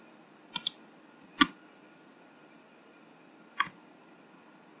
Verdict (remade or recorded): recorded